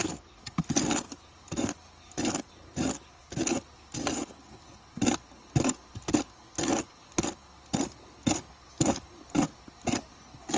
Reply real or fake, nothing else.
real